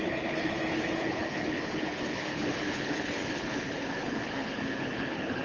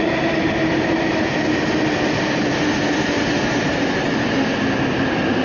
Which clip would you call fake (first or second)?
first